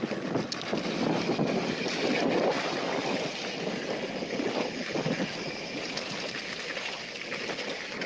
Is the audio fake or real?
real